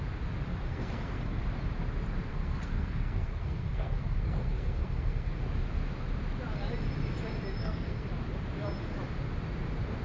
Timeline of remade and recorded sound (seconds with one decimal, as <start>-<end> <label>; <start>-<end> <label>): 0.0-0.5 recorded; 0.5-1.4 remade; 1.4-2.3 recorded; 2.3-5.4 remade; 5.4-7.6 recorded; 7.6-8.1 remade; 8.1-10.0 recorded